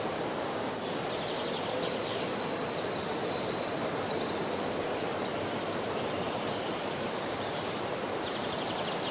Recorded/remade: recorded